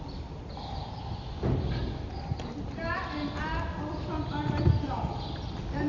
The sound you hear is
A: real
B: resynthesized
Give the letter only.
A